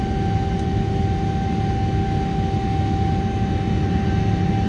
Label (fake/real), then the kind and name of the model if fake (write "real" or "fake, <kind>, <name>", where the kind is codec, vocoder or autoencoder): real